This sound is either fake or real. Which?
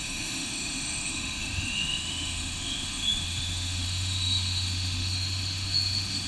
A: fake